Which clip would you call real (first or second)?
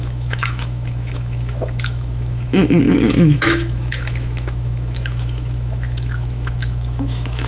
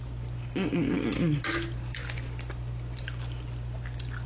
second